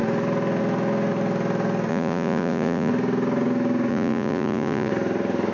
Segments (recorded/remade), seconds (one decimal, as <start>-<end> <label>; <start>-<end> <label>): 0.0-1.9 recorded; 1.9-2.9 remade; 2.9-3.9 recorded; 3.9-4.9 remade; 4.9-5.5 recorded